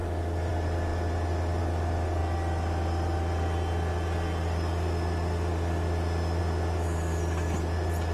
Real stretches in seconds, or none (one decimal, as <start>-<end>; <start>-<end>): 0.5-8.1